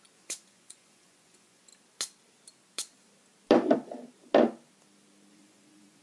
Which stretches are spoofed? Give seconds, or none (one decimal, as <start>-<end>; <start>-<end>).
0.0-1.7; 5.3-6.0